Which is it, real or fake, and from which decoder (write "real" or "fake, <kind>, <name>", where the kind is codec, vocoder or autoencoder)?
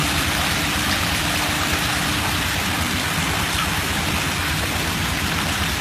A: real